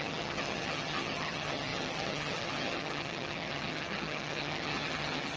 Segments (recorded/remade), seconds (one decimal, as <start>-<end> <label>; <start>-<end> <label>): 0.0-5.4 remade